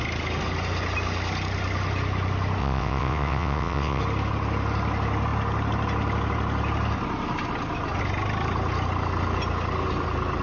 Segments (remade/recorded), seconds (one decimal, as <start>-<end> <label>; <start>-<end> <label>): 0.0-2.6 recorded; 2.6-4.0 remade; 4.0-10.4 recorded